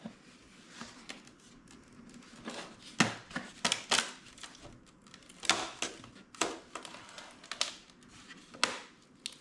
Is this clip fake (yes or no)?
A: no